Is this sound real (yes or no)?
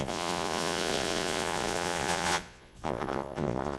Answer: no